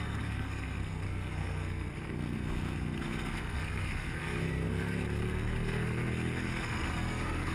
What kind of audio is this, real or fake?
fake